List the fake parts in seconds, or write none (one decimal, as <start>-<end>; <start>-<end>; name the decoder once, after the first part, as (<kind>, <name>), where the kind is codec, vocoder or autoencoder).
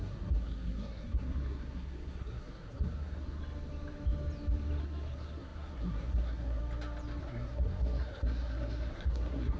0.0-3.4 (codec, SNAC); 4.8-6.6; 7.2-9.6